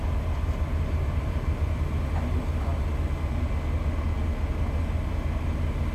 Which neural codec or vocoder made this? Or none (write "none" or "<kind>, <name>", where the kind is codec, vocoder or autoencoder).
none